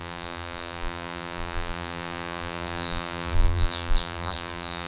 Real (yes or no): no